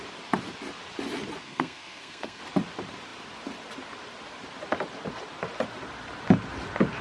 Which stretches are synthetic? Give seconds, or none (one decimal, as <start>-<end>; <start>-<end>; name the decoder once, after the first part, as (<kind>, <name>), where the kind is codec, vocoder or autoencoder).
1.4-2.4 (codec, SNAC)